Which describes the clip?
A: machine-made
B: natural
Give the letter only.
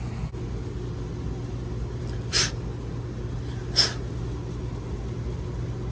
B